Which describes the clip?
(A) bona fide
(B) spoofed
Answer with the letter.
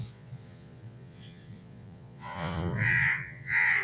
B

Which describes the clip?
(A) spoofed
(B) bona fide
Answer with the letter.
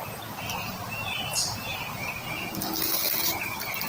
B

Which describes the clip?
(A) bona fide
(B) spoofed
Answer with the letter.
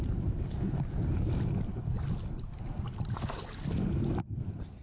A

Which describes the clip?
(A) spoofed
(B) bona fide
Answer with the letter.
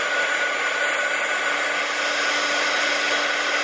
B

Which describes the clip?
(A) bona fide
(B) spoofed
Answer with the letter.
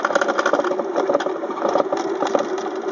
A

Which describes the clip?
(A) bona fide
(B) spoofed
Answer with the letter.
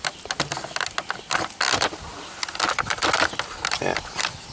A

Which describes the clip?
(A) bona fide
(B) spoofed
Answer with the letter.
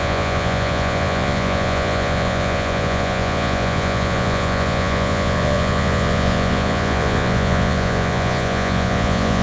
B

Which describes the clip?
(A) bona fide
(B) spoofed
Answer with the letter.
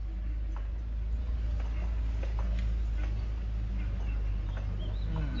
A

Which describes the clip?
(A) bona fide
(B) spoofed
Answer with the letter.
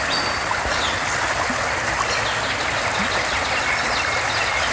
A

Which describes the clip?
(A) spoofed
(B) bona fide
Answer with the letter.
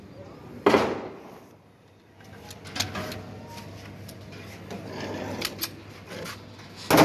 B